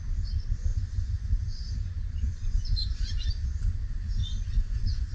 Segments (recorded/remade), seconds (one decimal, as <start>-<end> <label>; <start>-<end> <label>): 0.0-0.7 recorded; 0.7-3.8 remade; 3.8-4.2 recorded; 4.2-5.1 remade